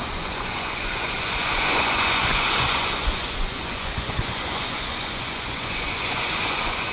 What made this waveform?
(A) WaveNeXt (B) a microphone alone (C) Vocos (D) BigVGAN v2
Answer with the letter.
C